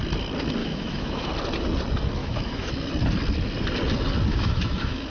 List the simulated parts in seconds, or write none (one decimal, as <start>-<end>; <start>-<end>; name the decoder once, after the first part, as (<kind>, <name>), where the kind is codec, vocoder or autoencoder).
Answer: 0.6-1.3 (autoencoder, DAC-VAE); 2.2-2.7; 4.3-5.1